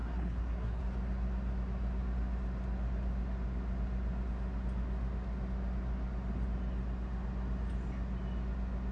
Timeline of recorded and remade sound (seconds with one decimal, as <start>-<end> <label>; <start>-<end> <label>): 0.0-0.8 remade; 0.8-8.9 recorded